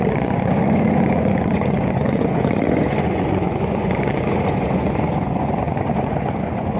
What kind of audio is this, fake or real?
fake